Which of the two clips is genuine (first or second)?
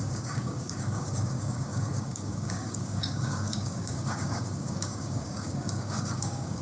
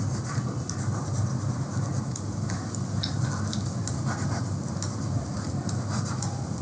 second